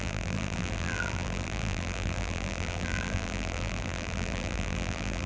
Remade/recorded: remade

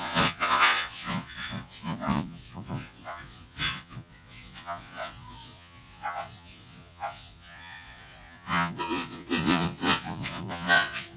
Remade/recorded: remade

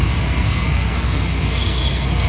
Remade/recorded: remade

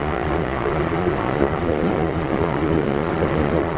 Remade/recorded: remade